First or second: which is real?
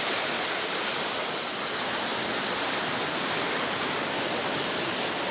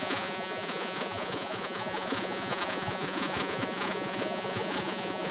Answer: first